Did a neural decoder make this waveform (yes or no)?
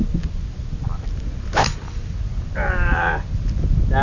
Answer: no